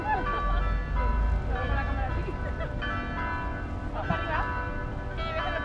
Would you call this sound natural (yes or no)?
yes